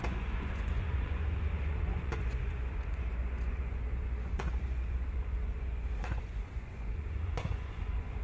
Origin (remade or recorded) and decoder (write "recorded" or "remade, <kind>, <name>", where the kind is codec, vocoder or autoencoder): remade, vocoder, Vocos